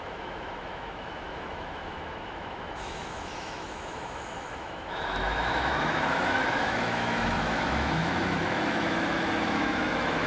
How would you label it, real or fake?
fake